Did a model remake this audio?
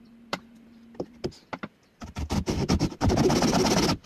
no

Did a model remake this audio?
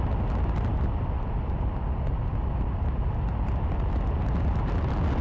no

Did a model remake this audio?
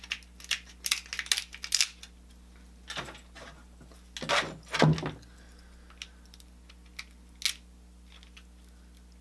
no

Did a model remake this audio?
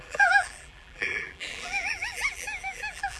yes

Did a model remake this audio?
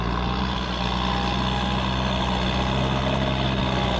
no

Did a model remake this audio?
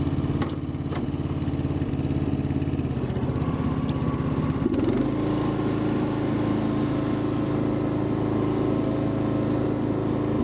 no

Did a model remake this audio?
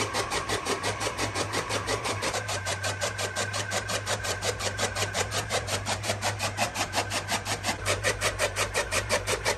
yes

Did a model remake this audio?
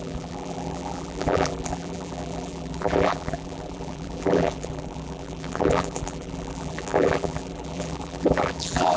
yes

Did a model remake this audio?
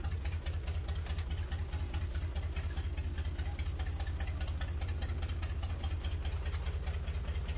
no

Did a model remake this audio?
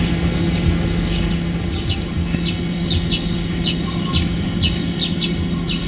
no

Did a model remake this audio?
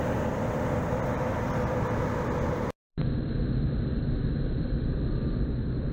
yes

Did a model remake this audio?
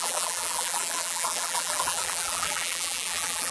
yes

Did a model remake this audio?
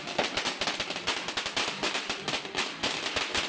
no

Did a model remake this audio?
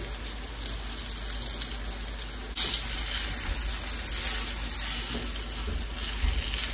no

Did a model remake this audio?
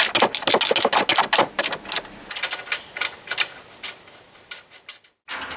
no